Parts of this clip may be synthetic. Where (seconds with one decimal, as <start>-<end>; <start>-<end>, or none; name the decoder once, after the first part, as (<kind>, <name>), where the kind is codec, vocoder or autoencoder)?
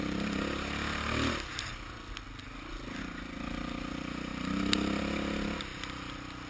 none